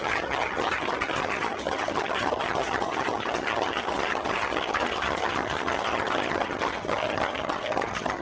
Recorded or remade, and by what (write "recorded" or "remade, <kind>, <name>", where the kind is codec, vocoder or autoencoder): remade, vocoder, HiFi-GAN